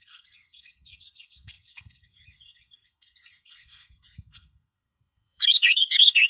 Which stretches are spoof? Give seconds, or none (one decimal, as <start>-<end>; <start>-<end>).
0.0-6.3